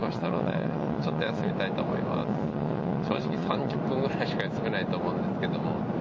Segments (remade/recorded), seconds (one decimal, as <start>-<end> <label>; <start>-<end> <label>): 0.0-1.5 remade; 1.5-2.2 recorded; 2.2-3.8 remade; 3.8-6.0 recorded